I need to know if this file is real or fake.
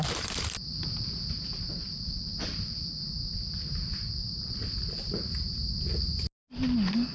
real